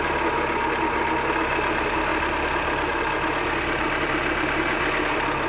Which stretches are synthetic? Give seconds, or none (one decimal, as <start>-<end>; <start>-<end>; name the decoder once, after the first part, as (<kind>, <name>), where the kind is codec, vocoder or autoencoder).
none